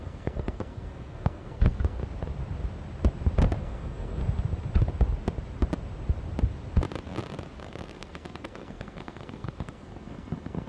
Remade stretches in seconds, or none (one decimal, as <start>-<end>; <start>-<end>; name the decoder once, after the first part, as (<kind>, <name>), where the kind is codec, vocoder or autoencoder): 0.0-2.0 (codec, SNAC); 3.6-4.2; 7.6-10.7

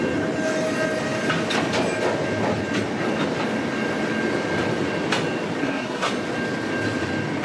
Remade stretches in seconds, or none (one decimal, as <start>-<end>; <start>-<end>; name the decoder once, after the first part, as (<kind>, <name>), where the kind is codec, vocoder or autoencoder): 5.6-6.1 (codec, SNAC)

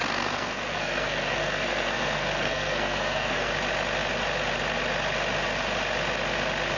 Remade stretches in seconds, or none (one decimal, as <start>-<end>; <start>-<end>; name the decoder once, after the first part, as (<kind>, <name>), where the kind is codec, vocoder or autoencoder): 0.0-3.5 (codec, SNAC)

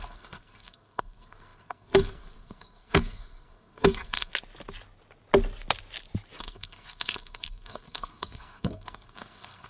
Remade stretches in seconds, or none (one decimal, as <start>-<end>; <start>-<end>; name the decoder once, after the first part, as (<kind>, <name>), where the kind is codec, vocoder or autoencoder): 0.0-4.3 (codec, SNAC); 6.4-9.7

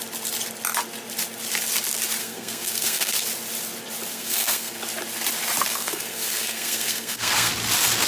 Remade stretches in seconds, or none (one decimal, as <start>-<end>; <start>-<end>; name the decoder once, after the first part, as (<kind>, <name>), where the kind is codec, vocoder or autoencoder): 2.2-3.2 (codec, SNAC); 4.1-4.8; 5.7-7.5

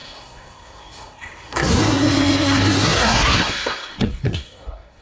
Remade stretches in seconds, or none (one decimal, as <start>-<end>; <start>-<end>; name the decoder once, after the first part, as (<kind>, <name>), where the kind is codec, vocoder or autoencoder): 0.0-5.0 (codec, SNAC)

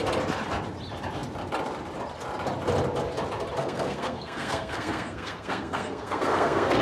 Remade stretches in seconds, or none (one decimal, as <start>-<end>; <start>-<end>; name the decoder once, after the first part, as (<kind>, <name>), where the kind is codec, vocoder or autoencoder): 3.6-6.8 (codec, SNAC)